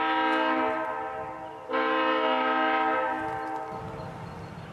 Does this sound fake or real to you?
real